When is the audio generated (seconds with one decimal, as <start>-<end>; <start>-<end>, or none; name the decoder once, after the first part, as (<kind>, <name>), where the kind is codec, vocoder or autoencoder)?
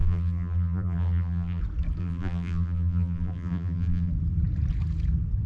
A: 0.0-1.6 (vocoder, BigVGAN v2); 2.0-4.1